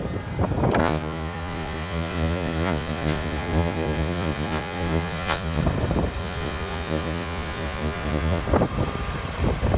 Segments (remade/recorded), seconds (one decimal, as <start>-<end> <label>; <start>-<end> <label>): 0.0-0.8 recorded; 0.8-5.6 remade; 5.6-6.2 recorded; 6.2-8.4 remade; 8.4-9.8 recorded